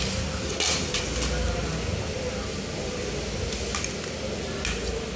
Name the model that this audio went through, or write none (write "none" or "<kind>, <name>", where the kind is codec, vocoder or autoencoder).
none